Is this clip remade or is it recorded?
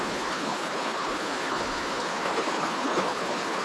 remade